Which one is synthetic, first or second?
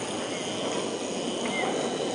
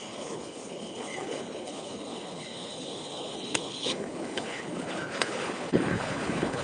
second